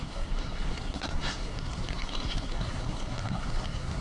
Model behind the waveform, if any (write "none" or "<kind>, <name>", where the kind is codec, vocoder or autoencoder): codec, SNAC